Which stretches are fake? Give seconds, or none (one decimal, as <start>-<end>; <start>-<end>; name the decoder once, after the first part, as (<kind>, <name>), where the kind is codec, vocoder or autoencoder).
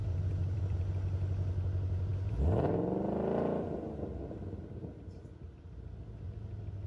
0.0-0.8 (vocoder, BigVGAN v2)